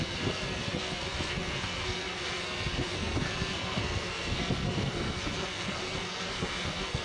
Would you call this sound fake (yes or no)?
yes